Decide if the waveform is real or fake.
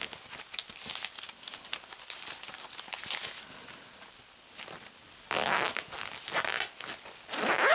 real